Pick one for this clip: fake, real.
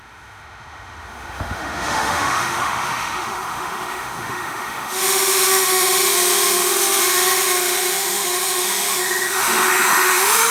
fake